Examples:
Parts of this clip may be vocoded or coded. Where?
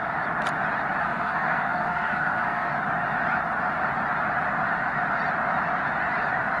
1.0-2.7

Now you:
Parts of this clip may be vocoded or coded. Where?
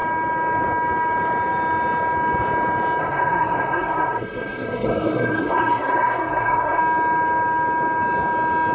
3.0-6.8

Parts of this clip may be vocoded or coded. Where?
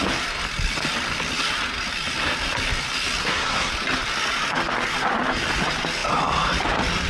3.2-3.7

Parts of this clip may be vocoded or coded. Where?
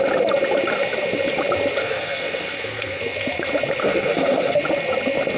1.8-3.0; 3.8-4.6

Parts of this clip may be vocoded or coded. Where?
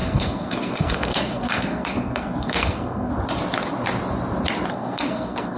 0.0-3.1; 4.7-5.6